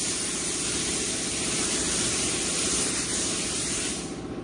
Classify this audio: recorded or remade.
recorded